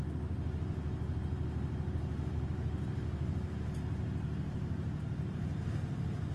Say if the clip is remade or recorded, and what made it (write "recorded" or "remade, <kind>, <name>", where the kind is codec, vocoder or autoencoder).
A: recorded